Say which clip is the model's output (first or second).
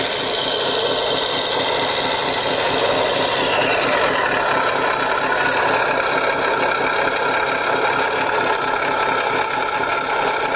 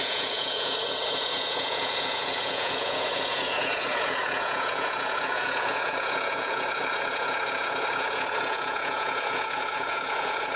second